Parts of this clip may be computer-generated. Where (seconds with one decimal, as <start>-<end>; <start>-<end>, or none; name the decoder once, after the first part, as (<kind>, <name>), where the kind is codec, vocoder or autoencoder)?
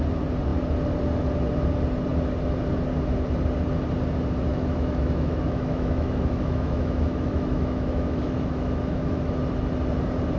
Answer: 4.5-9.3 (autoencoder, DAC-VAE)